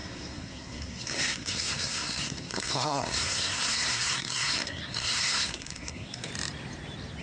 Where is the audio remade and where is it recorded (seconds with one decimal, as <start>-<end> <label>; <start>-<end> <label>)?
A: 0.0-6.3 remade; 6.3-7.2 recorded